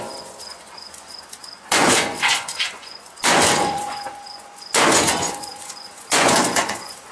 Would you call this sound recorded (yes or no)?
no